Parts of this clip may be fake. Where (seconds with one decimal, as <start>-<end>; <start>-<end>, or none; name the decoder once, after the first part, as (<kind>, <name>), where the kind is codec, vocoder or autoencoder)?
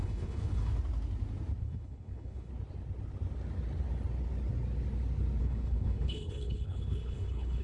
0.0-0.7 (codec, HILCodec); 1.6-2.5; 5.4-7.6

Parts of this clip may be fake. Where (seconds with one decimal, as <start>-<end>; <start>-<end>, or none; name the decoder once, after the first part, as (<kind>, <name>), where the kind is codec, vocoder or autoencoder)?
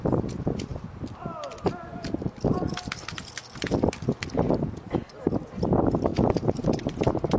none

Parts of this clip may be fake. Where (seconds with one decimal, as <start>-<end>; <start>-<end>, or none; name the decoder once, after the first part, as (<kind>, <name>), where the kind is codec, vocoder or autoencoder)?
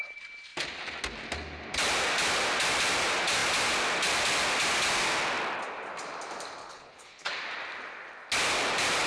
6.6-7.3 (codec, HILCodec)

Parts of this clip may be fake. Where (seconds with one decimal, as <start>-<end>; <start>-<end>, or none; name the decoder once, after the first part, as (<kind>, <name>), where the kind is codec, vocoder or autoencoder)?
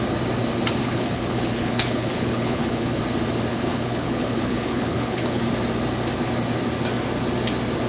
0.8-3.0 (codec, HILCodec); 3.5-5.4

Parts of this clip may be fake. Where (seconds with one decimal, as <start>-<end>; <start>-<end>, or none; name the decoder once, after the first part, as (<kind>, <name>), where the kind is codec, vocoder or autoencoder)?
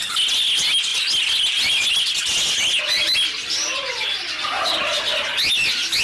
none